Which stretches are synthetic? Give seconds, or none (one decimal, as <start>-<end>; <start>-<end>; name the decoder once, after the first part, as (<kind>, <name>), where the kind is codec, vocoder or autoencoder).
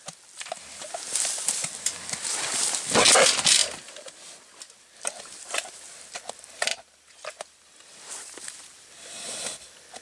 none